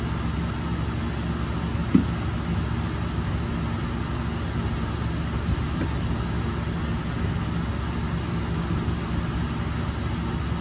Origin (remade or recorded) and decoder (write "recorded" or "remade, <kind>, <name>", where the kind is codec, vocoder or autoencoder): recorded